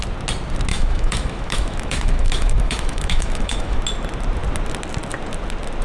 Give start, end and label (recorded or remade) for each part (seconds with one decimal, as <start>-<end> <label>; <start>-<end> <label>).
0.0-0.7 recorded; 0.7-3.8 remade; 3.8-5.8 recorded